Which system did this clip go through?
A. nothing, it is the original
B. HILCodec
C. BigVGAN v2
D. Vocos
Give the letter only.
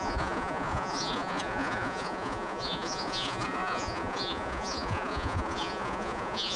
D